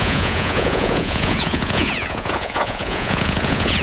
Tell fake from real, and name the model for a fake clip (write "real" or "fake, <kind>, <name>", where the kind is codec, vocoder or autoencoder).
fake, vocoder, Vocos